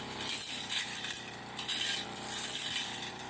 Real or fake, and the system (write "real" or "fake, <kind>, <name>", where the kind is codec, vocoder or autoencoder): fake, vocoder, BigVGAN v2